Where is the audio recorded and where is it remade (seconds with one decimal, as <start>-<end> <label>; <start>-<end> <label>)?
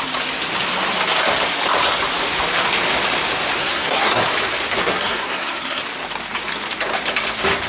0.0-3.6 recorded; 3.6-4.2 remade; 4.2-4.8 recorded; 4.8-5.8 remade; 5.8-7.7 recorded